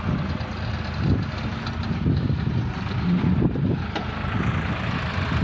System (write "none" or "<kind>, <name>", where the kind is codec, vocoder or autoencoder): none